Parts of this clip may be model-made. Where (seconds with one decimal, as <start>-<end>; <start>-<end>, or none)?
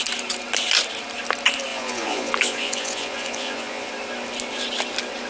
1.7-3.9